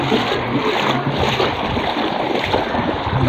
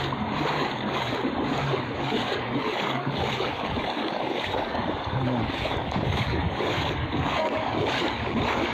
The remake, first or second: second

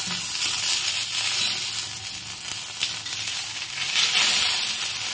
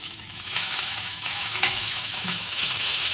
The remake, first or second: second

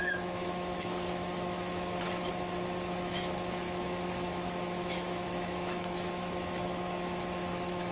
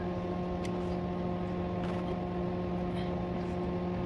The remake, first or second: first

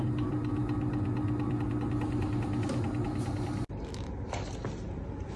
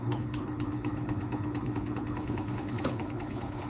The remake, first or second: second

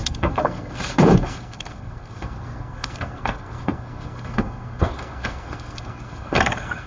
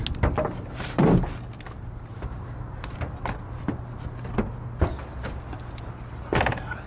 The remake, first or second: first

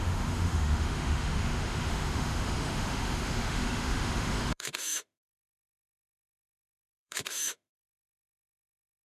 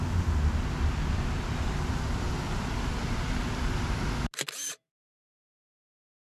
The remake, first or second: first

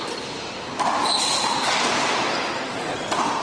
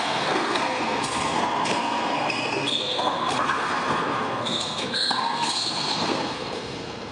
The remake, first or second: second